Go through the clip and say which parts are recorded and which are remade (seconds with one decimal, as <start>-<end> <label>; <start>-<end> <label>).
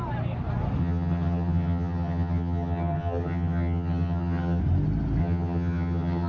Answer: 0.0-0.8 recorded; 0.8-4.6 remade; 4.6-5.2 recorded; 5.2-6.3 remade